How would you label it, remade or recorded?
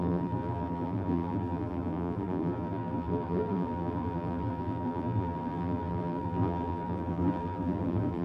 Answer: remade